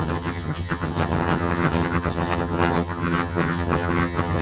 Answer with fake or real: fake